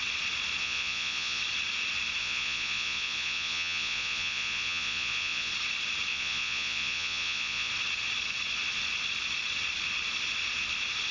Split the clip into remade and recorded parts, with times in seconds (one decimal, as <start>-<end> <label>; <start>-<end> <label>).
0.0-0.6 recorded; 0.6-1.4 remade; 1.4-2.2 recorded; 2.2-5.5 remade; 5.5-6.1 recorded; 6.1-7.7 remade; 7.7-11.1 recorded